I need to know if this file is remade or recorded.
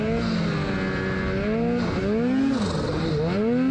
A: recorded